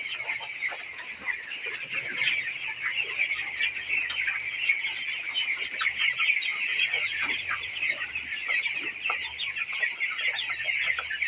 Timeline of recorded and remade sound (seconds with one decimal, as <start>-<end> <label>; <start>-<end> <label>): 0.0-6.7 recorded; 6.7-7.8 remade; 7.8-11.3 recorded